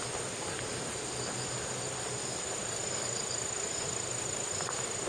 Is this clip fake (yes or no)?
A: no